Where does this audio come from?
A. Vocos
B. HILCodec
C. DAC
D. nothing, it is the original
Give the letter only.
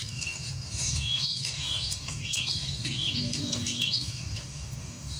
C